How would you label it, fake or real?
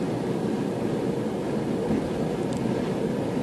real